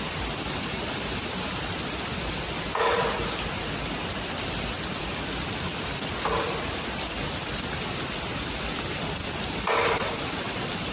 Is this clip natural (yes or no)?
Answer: no